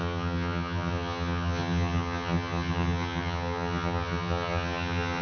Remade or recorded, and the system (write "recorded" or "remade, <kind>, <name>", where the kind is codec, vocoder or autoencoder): remade, vocoder, HiFi-GAN